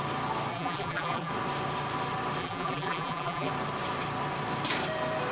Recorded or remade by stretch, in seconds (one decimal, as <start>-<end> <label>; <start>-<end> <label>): 0.0-0.5 recorded; 0.5-1.3 remade; 1.3-2.4 recorded; 2.4-3.5 remade; 3.5-5.3 recorded